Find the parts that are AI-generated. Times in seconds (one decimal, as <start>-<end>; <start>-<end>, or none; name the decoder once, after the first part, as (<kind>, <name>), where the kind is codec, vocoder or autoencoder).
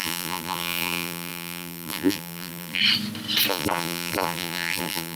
0.0-2.8 (vocoder, BigVGAN v2); 3.5-5.2